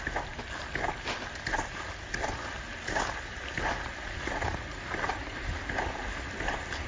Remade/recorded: recorded